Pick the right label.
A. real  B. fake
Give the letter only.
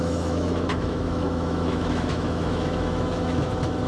B